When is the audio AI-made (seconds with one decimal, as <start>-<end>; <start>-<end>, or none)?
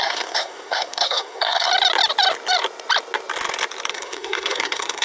0.0-1.7; 3.9-5.0